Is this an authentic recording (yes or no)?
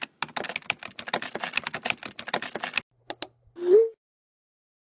yes